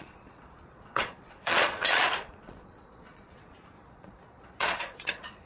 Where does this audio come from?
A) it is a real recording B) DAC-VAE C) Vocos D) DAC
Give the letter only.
C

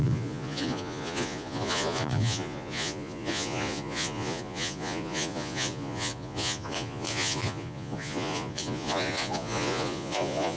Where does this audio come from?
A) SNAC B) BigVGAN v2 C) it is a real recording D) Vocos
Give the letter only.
D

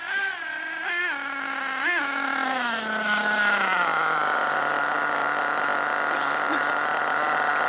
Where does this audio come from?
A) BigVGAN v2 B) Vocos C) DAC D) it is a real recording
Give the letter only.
D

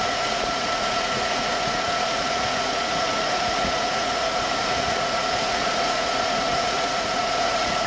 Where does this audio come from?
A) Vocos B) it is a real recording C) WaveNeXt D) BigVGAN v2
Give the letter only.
A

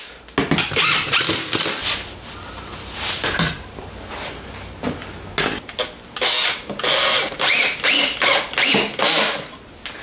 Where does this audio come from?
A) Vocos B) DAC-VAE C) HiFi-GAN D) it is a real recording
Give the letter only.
D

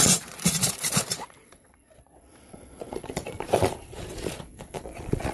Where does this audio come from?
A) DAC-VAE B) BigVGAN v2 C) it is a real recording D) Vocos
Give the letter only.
D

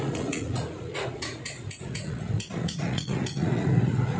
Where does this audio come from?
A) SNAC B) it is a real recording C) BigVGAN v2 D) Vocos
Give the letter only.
D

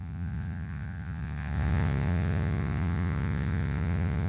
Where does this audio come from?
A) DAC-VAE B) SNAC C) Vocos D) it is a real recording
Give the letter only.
C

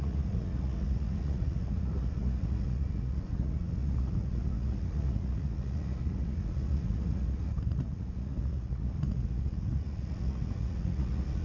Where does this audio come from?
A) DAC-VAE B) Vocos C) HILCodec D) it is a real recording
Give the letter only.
B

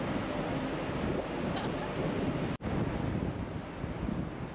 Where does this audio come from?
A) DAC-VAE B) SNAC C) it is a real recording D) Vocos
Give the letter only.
C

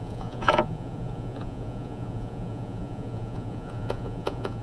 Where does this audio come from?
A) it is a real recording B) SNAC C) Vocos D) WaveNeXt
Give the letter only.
C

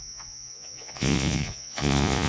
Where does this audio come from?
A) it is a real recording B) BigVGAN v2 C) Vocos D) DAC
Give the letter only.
C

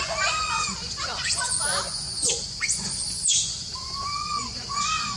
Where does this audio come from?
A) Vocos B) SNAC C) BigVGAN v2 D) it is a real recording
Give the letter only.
A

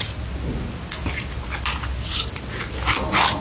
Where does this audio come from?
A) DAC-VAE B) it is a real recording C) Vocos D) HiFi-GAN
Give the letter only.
B